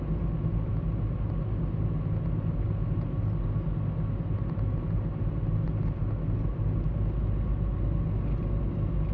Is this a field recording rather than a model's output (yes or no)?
yes